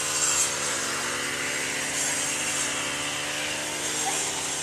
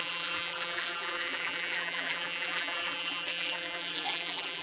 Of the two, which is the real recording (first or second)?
first